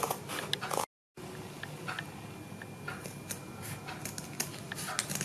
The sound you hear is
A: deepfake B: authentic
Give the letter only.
B